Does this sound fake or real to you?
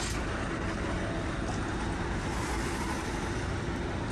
real